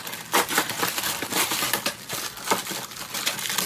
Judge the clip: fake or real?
real